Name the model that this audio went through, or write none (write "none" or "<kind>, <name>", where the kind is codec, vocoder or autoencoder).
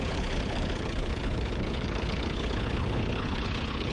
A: codec, HILCodec